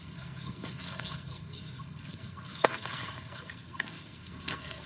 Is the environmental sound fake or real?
fake